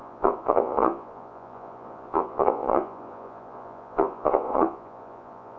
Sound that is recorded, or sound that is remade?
remade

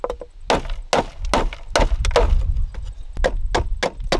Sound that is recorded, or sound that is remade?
recorded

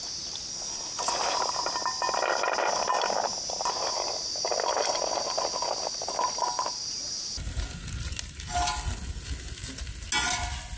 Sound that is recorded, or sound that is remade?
recorded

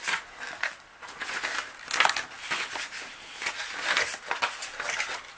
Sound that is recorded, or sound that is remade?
recorded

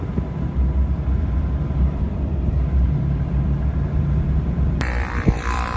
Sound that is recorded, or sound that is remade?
remade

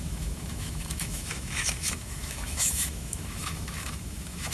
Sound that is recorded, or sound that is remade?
remade